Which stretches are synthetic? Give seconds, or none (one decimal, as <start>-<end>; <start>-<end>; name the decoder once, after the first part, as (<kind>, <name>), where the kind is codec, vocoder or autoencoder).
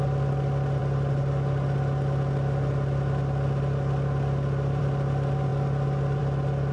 none